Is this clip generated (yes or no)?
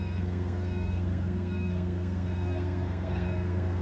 yes